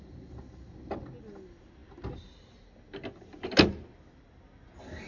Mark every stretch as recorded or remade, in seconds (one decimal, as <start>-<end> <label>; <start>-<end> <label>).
0.0-5.1 recorded